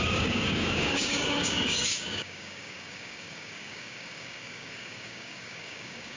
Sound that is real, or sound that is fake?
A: fake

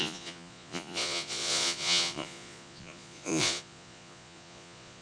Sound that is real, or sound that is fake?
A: fake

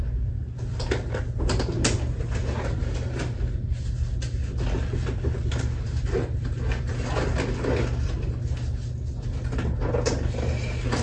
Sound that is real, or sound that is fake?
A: real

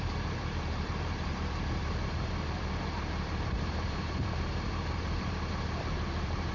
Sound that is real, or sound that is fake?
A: fake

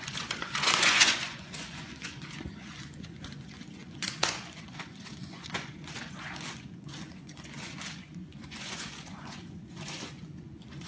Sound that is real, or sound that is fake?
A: fake